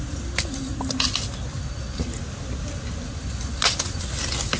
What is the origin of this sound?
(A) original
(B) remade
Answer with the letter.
A